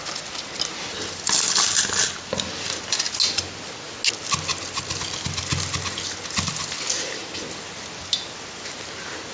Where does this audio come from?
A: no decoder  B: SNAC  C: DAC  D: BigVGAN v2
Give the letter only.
A